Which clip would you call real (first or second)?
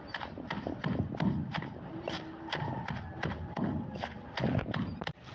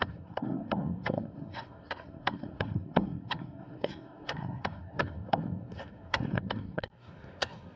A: first